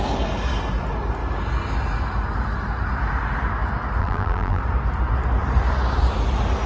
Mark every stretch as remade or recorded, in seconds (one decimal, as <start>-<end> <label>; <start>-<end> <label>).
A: 0.0-4.0 recorded; 4.0-4.6 remade; 4.6-6.7 recorded